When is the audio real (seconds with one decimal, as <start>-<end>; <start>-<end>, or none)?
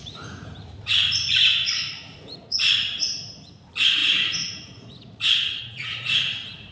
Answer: none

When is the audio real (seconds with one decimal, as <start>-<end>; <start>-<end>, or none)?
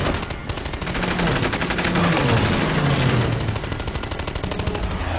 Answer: 0.0-5.2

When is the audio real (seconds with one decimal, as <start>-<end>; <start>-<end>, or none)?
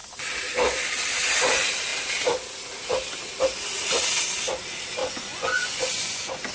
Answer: 0.0-5.0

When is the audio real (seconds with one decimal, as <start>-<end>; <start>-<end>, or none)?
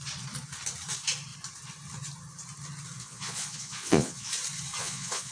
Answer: 0.0-3.0; 4.3-4.8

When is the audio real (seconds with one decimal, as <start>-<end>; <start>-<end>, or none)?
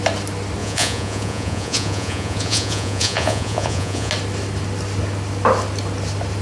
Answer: 0.0-0.6; 4.1-6.4